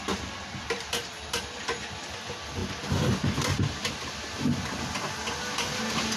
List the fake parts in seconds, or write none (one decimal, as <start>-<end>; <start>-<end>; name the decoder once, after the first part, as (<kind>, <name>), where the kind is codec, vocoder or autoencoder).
none